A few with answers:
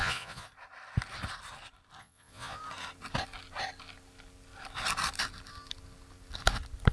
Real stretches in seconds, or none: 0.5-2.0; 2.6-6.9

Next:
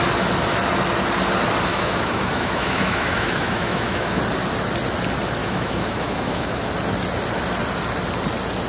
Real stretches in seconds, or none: 0.0-1.7; 4.2-5.4; 6.7-8.7

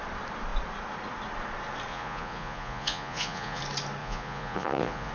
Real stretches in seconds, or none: 0.0-1.9; 3.6-4.0

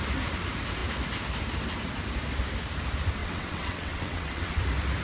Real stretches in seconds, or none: 0.0-3.2; 4.6-5.0

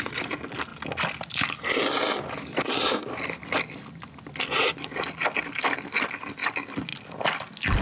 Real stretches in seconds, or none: 0.0-7.8

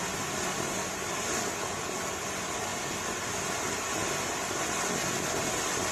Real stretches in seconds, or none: 0.0-5.9